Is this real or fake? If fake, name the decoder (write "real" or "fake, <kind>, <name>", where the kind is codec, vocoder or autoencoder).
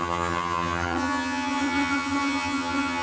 fake, vocoder, HiFi-GAN